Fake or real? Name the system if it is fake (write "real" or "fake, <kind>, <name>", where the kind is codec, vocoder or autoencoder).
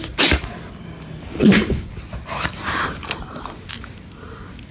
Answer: real